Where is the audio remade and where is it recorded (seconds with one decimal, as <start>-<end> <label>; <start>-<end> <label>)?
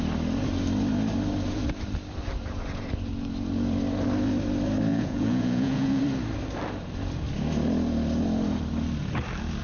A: 0.0-4.9 recorded; 4.9-6.0 remade; 6.0-9.6 recorded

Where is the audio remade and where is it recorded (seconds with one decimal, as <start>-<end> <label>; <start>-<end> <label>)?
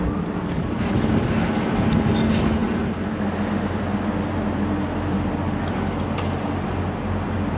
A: 0.0-7.6 recorded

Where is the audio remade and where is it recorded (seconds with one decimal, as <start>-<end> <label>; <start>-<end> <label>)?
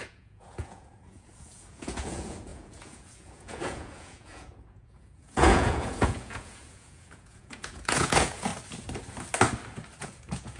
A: 0.0-8.5 remade; 8.5-10.0 recorded; 10.0-10.6 remade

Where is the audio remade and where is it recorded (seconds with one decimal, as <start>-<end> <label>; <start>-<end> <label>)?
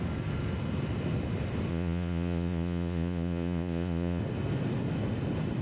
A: 0.0-1.7 recorded; 1.7-4.2 remade; 4.2-5.6 recorded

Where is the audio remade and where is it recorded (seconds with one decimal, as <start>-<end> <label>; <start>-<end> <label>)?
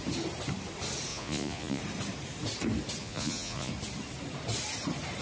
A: 0.0-1.1 recorded; 1.1-1.8 remade; 1.8-3.0 recorded; 3.0-3.7 remade; 3.7-5.2 recorded